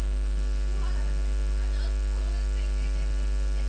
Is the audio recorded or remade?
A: recorded